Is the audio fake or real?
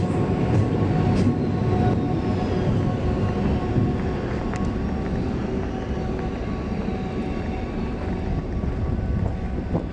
real